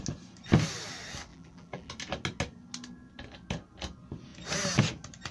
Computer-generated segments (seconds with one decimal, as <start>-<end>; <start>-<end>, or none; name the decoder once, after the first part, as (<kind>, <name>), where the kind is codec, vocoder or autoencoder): 1.3-1.9 (vocoder, BigVGAN v2)